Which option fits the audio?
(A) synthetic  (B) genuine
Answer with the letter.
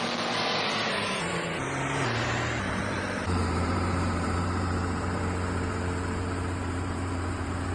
A